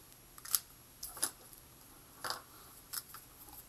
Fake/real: real